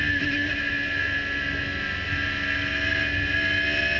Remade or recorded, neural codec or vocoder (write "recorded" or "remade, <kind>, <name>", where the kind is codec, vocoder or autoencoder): recorded